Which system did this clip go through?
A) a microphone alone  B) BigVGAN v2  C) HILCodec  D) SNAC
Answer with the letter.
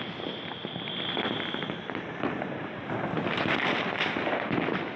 A